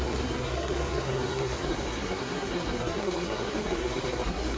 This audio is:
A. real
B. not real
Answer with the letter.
B